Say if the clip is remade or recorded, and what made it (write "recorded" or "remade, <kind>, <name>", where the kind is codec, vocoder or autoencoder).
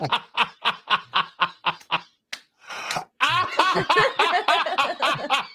remade, vocoder, Vocos